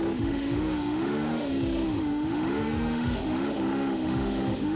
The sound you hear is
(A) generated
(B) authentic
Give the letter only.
A